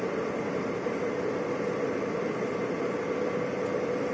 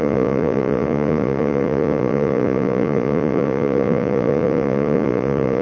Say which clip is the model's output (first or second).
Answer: second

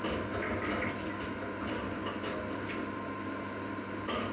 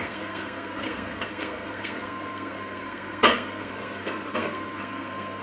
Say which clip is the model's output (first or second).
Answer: second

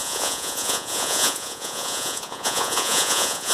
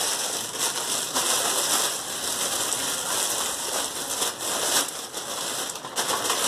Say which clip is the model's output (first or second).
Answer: first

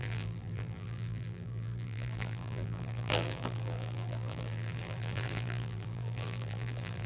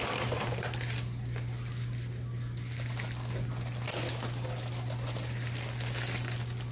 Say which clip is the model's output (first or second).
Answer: first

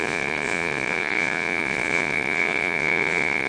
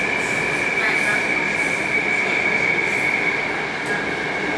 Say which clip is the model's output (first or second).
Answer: first